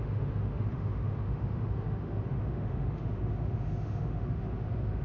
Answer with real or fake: fake